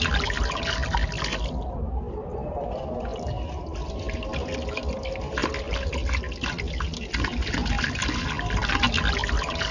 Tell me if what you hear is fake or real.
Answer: real